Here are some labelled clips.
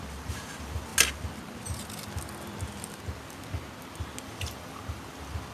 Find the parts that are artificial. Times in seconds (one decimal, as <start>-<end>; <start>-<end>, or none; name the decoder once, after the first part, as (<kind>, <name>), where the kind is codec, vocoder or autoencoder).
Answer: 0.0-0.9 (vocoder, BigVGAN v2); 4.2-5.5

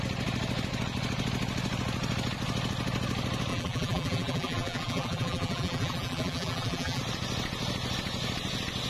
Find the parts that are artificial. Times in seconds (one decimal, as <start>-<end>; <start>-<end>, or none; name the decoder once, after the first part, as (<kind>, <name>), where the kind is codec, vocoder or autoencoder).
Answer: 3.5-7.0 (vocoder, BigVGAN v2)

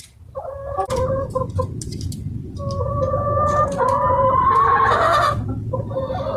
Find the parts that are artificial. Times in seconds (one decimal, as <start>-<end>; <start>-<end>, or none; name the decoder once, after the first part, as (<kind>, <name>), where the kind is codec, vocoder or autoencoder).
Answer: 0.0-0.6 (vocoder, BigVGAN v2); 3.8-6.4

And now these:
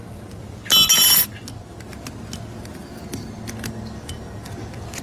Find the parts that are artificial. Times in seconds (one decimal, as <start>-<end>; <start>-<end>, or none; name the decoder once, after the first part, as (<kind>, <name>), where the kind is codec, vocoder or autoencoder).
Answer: none

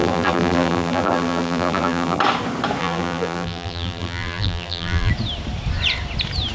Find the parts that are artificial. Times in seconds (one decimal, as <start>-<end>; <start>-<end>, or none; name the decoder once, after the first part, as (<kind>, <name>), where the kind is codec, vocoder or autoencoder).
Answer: 0.0-2.2 (vocoder, BigVGAN v2); 2.8-5.1